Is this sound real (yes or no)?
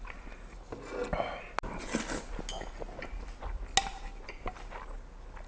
yes